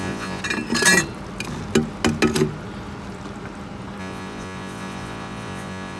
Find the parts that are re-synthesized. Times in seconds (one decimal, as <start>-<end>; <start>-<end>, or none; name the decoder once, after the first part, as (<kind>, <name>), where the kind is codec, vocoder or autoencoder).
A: 0.0-0.4 (vocoder, Vocos); 4.0-6.0